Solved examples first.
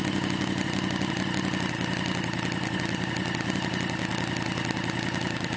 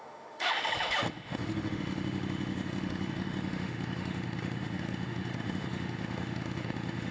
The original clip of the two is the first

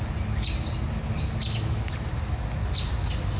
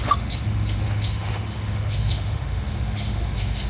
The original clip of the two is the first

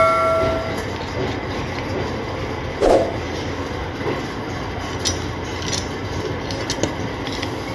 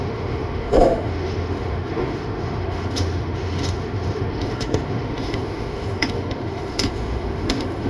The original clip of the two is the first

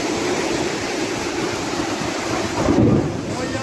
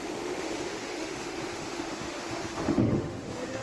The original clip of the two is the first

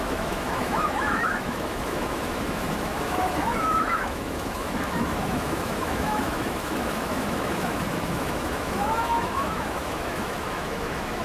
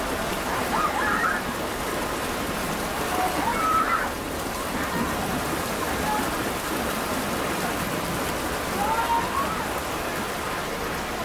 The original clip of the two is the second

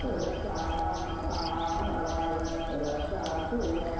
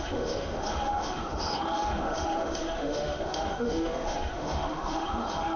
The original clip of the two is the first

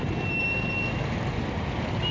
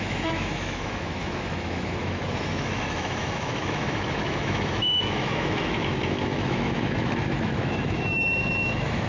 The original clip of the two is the first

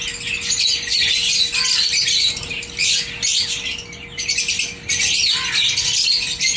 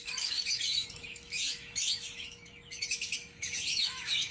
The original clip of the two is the first